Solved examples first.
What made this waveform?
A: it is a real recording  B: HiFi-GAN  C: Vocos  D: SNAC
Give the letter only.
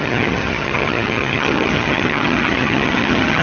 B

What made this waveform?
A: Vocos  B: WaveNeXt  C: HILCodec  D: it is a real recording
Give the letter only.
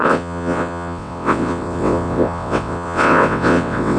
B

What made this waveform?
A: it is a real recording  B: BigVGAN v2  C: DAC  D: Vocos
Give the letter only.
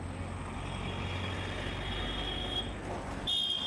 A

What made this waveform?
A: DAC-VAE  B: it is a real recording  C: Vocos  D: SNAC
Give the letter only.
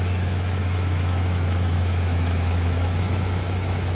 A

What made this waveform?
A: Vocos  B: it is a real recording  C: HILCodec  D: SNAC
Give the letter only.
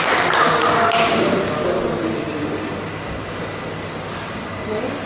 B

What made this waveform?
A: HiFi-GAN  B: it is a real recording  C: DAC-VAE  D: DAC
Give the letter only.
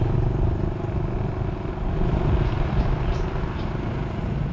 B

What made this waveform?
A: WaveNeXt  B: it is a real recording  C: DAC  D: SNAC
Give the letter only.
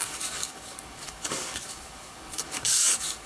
C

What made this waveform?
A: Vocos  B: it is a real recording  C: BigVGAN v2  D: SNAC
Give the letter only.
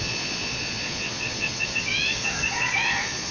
A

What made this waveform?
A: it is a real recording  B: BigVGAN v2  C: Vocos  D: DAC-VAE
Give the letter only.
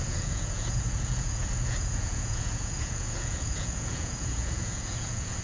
C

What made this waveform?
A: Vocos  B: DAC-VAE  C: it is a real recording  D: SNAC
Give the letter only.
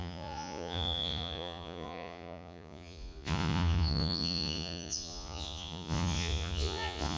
A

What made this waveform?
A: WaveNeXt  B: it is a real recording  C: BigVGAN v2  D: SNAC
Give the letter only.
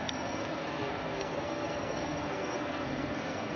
D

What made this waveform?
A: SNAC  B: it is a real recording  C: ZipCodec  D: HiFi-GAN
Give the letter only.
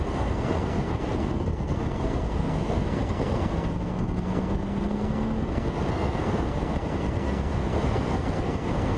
A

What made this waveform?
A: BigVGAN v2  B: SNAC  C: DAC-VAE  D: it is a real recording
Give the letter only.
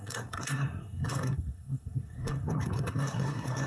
B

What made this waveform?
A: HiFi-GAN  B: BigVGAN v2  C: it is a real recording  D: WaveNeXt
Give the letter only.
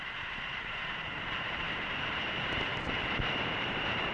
B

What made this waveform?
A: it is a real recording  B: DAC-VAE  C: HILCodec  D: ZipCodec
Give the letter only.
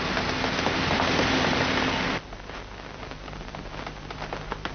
A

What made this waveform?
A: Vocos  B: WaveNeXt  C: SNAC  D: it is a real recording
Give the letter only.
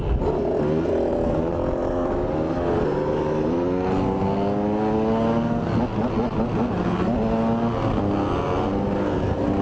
D